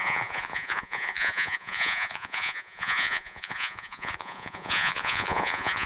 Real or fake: fake